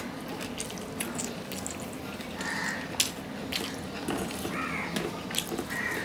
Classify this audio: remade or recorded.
recorded